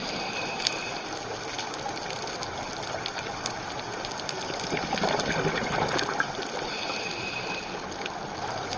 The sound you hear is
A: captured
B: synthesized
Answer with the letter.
A